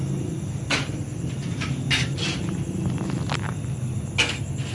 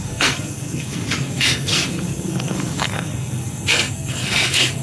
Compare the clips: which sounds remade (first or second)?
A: second